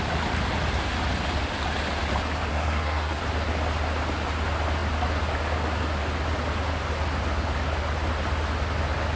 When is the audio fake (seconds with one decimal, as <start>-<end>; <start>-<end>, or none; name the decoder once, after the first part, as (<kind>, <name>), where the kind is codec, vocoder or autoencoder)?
2.5-3.2 (codec, SNAC)